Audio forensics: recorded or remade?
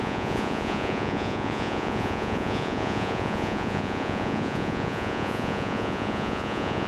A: remade